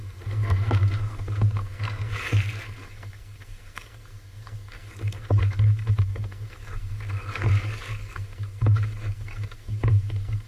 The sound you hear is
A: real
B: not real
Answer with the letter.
B